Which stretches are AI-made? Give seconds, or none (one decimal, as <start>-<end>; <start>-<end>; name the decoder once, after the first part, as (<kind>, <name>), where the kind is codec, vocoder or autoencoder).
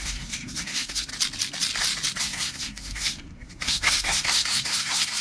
0.0-1.1 (codec, SNAC); 2.2-5.2